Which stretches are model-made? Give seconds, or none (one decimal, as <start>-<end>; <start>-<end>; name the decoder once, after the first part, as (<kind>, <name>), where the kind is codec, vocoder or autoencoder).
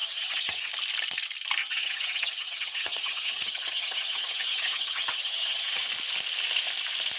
0.0-0.7 (vocoder, HiFi-GAN); 1.6-5.9